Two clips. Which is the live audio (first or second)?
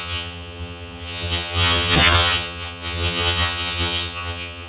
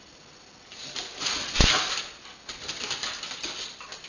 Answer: second